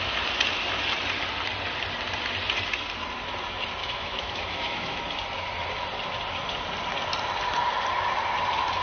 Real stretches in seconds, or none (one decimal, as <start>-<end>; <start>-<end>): 0.0-3.8; 5.0-8.8